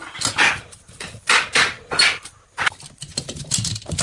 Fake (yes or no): no